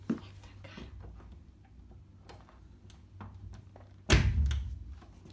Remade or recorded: recorded